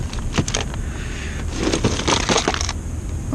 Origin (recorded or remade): remade